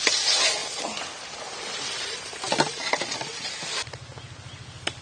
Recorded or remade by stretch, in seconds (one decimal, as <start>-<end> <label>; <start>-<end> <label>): 0.0-0.6 recorded; 0.6-3.6 remade; 3.6-5.0 recorded

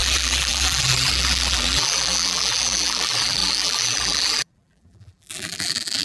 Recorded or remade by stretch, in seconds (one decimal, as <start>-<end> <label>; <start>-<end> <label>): 0.0-6.0 remade

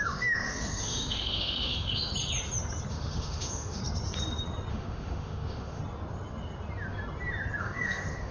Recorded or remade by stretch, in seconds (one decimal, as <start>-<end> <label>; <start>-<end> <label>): 0.0-2.1 remade; 2.1-2.9 recorded; 2.9-3.8 remade; 3.8-4.7 recorded; 4.7-5.8 remade; 5.8-7.6 recorded; 7.6-8.3 remade

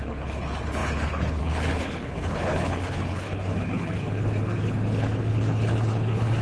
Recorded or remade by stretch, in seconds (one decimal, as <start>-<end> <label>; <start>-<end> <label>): 0.0-6.4 remade